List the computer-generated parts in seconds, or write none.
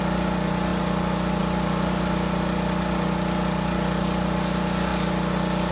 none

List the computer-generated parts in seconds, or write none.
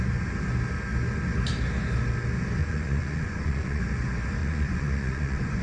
2.6-3.8 (vocoder, Vocos); 4.4-5.6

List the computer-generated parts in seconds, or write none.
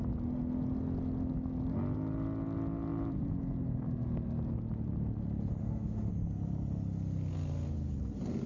5.6-6.1 (autoencoder, DAC-VAE)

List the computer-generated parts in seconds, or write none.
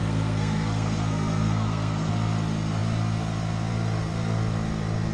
0.0-2.1 (codec, SNAC)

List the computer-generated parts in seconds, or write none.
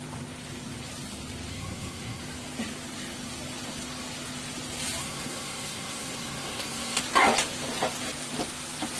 1.5-2.2 (codec, SNAC); 5.0-7.0